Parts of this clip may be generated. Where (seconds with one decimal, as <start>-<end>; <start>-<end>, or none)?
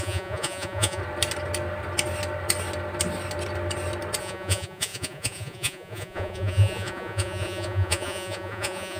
0.0-1.0; 4.2-9.0